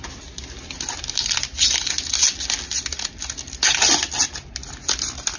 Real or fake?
real